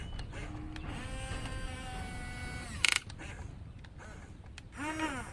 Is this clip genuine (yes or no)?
yes